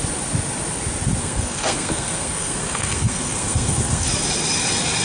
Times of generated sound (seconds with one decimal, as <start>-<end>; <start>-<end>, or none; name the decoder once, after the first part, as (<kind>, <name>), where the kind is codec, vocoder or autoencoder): 1.2-4.1 (codec, SNAC)